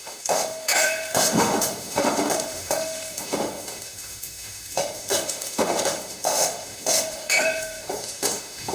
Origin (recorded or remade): remade